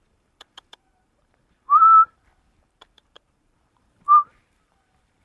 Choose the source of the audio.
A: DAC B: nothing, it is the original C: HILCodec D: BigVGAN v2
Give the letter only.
D